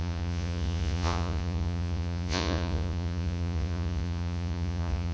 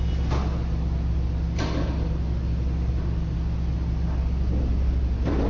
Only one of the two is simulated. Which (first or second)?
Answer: first